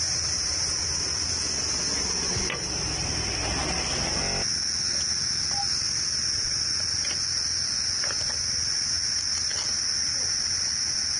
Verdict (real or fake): real